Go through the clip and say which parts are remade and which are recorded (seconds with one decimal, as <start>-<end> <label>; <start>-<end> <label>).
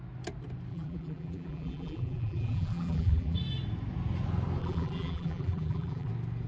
0.0-0.7 recorded; 0.7-3.4 remade; 3.4-4.6 recorded; 4.6-6.1 remade; 6.1-6.5 recorded